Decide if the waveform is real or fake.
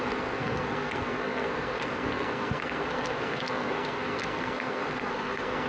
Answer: fake